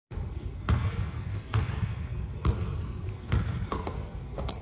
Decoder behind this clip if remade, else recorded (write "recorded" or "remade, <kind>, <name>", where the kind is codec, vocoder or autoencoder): remade, codec, SNAC